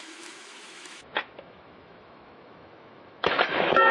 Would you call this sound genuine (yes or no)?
no